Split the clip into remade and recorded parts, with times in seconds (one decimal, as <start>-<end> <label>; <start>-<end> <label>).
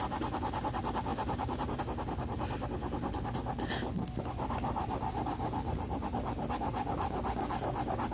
0.0-1.1 recorded; 1.1-1.8 remade; 1.8-8.1 recorded